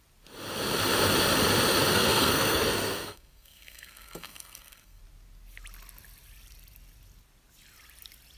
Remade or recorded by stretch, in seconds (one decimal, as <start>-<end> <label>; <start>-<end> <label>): 0.0-1.9 recorded; 1.9-5.0 remade; 5.0-8.4 recorded